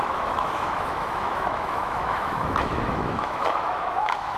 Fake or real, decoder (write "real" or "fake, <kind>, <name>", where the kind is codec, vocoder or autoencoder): fake, autoencoder, DAC-VAE